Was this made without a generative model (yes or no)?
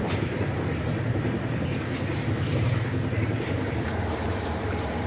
no